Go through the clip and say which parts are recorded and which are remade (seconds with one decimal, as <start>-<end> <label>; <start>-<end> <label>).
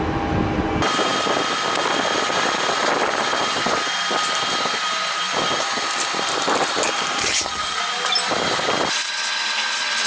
0.0-7.2 recorded; 7.2-7.8 remade; 7.8-10.1 recorded